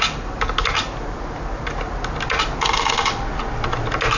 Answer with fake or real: real